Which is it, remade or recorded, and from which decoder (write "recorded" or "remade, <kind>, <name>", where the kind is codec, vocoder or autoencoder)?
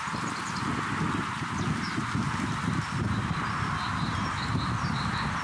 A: recorded